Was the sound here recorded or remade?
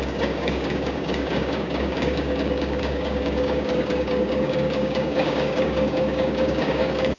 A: remade